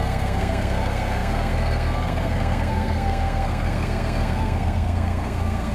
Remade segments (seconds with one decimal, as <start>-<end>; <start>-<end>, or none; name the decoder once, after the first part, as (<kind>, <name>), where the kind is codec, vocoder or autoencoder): 0.0-5.7 (codec, SNAC)